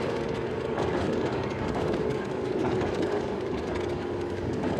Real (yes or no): no